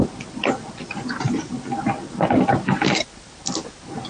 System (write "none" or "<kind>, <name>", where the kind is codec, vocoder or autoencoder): none